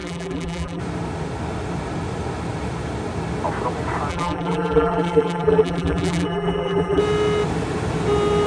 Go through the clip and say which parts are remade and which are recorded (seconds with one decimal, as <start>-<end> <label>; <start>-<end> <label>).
0.0-0.8 remade; 0.8-4.1 recorded; 4.1-7.0 remade; 7.0-8.5 recorded